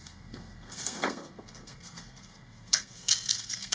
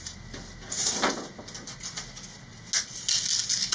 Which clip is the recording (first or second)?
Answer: second